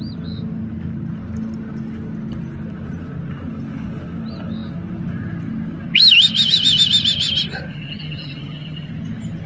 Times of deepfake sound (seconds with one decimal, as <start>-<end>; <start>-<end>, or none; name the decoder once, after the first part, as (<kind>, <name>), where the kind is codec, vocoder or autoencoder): 7.7-8.9 (vocoder, HiFi-GAN)